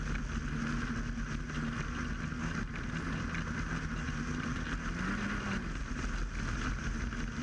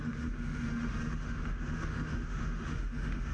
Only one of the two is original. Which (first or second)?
first